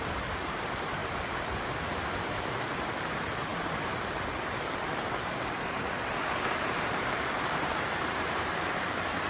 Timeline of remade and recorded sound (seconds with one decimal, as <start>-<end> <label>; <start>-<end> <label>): 0.0-1.0 remade; 1.0-3.0 recorded; 3.0-9.3 remade